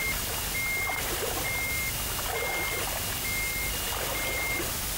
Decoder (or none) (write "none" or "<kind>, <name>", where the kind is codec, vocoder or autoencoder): none